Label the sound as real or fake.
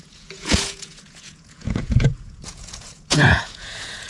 fake